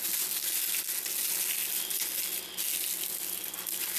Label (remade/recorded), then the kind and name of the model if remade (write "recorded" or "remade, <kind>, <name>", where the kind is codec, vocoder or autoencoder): recorded